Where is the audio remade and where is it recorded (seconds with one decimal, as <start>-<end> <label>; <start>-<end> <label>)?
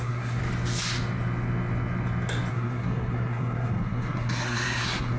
0.0-0.4 remade; 0.4-2.5 recorded; 2.5-5.2 remade